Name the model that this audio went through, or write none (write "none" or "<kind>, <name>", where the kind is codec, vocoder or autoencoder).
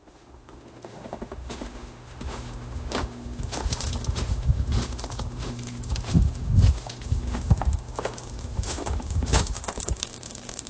autoencoder, DAC-VAE